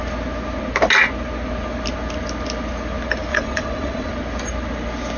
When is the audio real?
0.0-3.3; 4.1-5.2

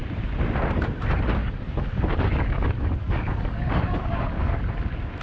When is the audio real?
0.0-1.4; 4.5-5.2

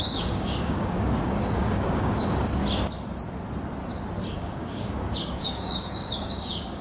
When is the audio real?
2.6-4.3

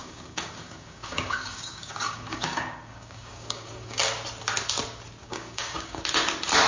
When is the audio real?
4.0-5.2; 6.0-6.7

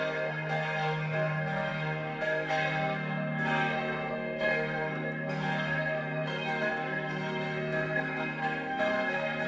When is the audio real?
none

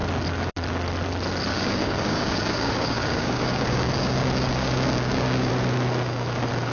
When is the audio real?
0.0-1.5; 5.5-6.7